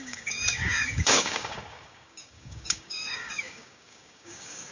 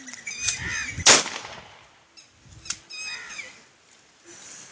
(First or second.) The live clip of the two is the second